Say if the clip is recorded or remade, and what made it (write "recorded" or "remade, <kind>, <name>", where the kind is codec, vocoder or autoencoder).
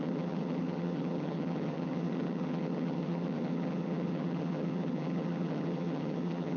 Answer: remade, vocoder, HiFi-GAN